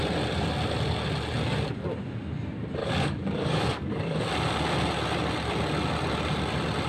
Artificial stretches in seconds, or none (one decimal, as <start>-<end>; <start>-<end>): 2.8-4.2